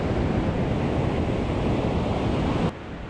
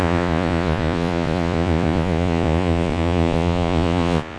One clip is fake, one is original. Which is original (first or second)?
first